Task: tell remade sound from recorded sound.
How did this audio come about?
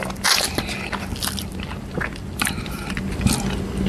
recorded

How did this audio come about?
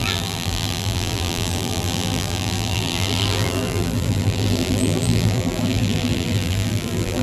remade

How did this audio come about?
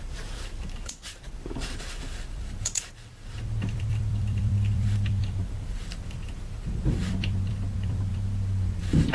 remade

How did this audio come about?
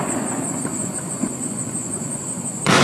remade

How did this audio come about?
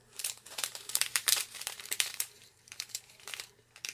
remade